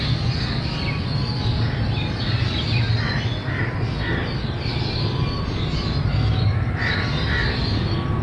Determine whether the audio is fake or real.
real